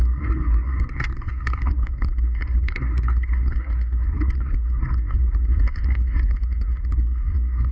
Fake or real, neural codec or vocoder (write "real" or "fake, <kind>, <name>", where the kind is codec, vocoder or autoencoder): fake, codec, SNAC